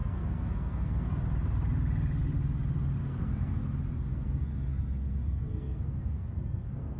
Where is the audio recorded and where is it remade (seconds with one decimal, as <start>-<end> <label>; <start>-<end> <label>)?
0.0-1.1 remade; 1.1-3.0 recorded; 3.0-3.6 remade; 3.6-4.1 recorded; 4.1-7.0 remade